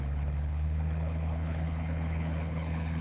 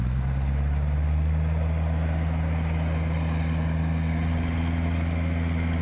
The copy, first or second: first